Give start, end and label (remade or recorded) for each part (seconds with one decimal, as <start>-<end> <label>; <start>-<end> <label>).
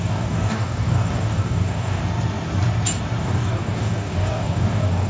0.0-2.0 remade; 2.0-3.2 recorded; 3.2-5.1 remade